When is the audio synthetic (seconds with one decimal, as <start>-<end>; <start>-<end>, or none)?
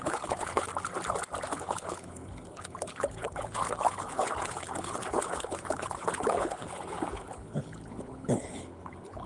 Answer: 0.0-0.7; 1.5-9.3